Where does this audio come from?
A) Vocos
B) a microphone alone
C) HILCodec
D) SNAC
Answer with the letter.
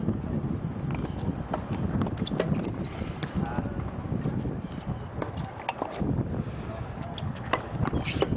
B